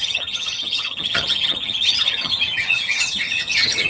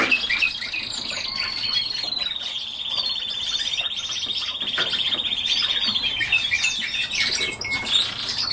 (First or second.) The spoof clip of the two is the first